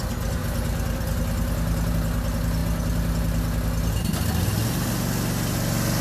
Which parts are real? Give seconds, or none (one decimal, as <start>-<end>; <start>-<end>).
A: 0.0-6.0